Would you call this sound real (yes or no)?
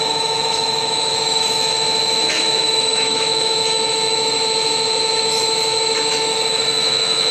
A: no